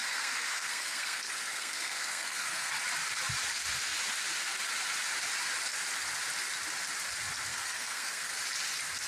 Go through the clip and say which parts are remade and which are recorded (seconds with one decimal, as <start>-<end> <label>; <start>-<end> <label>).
0.0-2.7 remade; 2.7-7.5 recorded; 7.5-8.3 remade; 8.3-9.1 recorded

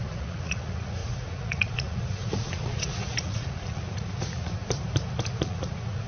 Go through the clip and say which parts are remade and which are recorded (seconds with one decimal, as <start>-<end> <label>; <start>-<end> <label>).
0.0-4.6 remade; 4.6-5.4 recorded; 5.4-6.1 remade

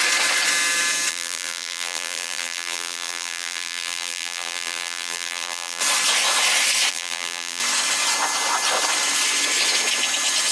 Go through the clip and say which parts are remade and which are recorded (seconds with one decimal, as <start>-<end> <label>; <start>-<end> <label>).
0.0-1.1 recorded; 1.1-5.8 remade; 5.8-6.9 recorded; 6.9-7.6 remade; 7.6-10.5 recorded

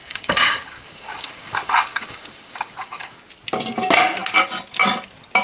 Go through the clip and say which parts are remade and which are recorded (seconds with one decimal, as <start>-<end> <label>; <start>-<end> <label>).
0.0-3.2 remade; 3.2-5.4 recorded

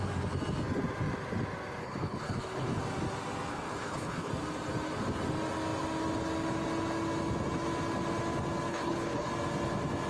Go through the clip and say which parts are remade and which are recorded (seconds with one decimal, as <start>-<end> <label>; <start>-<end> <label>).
0.0-1.8 recorded; 1.8-2.8 remade; 2.8-3.5 recorded; 3.5-4.3 remade; 4.3-8.7 recorded; 8.7-9.3 remade; 9.3-10.1 recorded

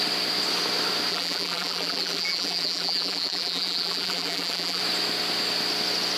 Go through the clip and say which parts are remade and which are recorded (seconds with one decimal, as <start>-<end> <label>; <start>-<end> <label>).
0.0-1.1 recorded; 1.1-4.8 remade; 4.8-6.2 recorded

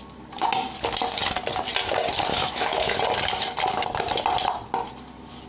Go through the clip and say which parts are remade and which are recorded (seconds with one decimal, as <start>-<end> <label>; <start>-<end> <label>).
0.0-2.3 recorded; 2.3-3.0 remade; 3.0-5.5 recorded

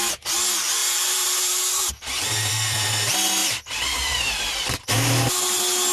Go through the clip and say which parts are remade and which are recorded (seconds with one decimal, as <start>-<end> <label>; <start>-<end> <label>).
0.0-0.8 recorded; 0.8-2.5 remade; 2.5-3.4 recorded; 3.4-4.8 remade; 4.8-5.9 recorded